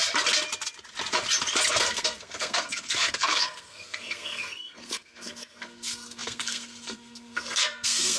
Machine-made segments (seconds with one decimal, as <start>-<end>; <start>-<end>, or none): 1.8-8.2